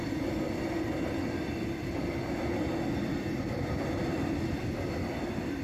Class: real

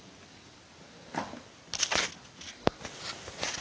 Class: real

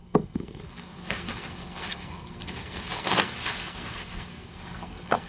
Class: fake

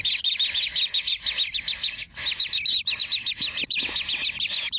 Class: real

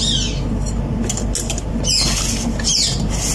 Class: real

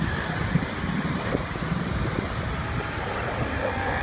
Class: real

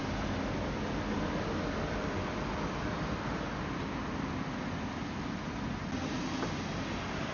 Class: real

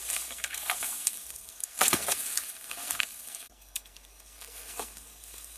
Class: fake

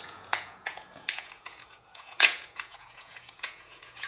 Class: fake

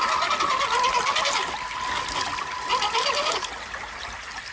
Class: real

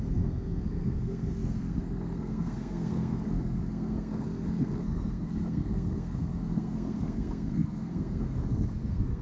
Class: fake